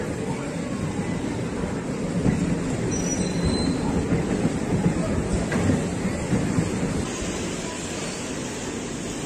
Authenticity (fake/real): real